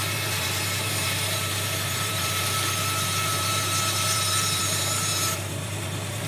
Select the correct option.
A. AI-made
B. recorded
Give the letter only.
A